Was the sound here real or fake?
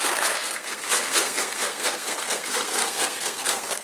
fake